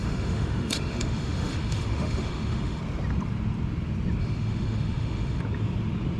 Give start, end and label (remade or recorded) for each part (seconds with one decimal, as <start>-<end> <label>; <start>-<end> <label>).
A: 0.0-2.8 remade; 2.8-4.2 recorded; 4.2-5.4 remade; 5.4-6.2 recorded